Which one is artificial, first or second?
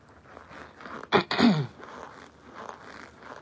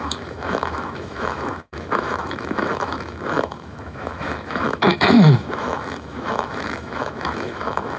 second